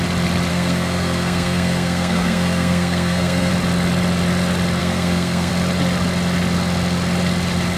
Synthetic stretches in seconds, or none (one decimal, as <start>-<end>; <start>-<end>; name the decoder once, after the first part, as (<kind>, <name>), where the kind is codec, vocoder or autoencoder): 0.5-3.5 (codec, SNAC); 4.8-5.5